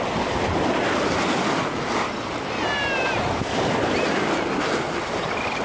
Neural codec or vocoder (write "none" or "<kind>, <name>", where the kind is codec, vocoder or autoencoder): none